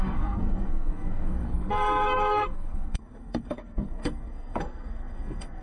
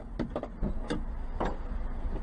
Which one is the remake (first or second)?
first